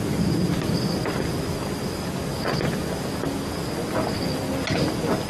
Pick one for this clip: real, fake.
real